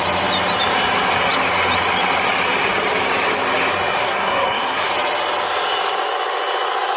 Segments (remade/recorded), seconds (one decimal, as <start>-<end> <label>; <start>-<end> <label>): 0.0-4.0 recorded; 4.0-4.9 remade; 4.9-7.0 recorded